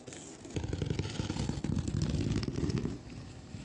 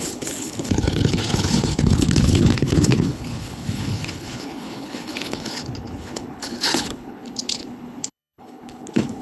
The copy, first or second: second